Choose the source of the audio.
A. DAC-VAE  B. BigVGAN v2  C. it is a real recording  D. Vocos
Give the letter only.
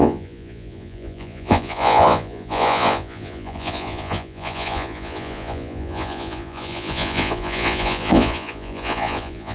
D